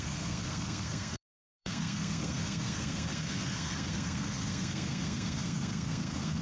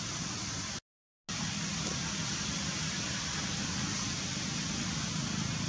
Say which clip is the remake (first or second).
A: first